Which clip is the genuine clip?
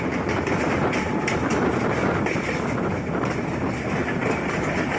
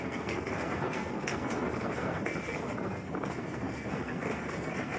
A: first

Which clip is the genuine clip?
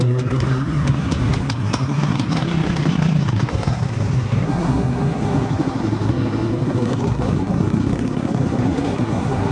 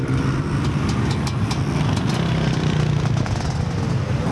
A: second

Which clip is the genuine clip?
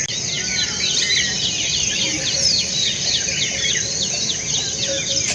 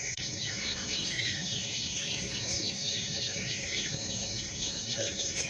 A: first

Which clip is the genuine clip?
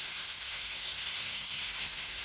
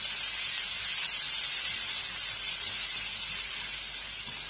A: second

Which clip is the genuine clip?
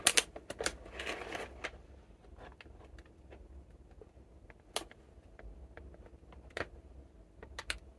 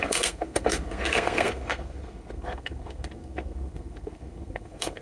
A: first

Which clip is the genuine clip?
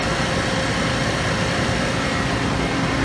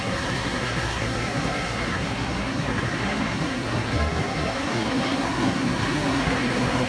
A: first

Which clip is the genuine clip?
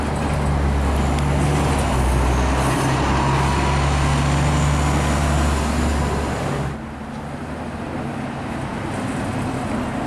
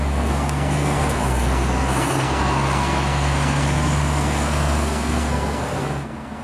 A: first